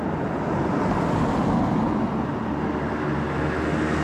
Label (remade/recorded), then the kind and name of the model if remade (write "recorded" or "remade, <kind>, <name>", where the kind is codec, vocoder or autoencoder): recorded